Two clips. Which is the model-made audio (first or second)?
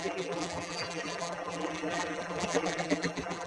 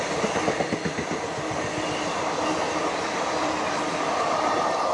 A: first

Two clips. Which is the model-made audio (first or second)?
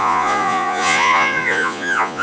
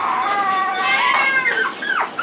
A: first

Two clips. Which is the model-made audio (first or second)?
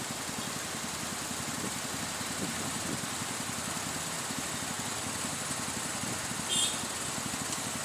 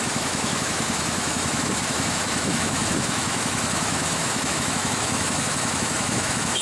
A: second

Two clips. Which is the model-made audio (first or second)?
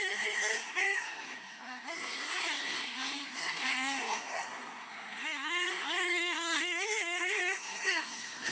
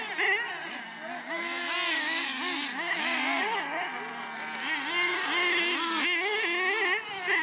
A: first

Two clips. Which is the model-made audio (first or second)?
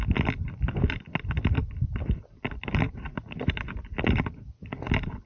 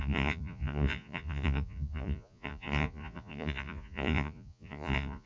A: second